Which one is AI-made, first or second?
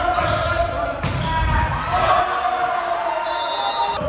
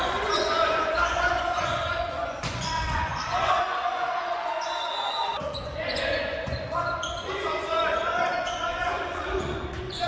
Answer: second